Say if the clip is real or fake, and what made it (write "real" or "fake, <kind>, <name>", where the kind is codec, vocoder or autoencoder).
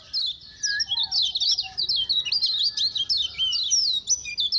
real